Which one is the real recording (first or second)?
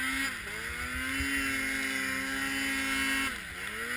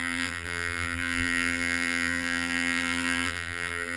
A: first